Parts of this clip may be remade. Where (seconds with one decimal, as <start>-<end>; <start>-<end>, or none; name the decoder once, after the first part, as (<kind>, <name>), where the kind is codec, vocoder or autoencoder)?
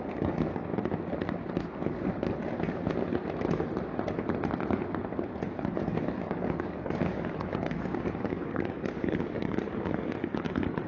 0.0-0.7 (codec, DAC); 5.4-10.9